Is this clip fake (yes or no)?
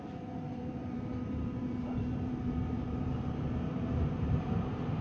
yes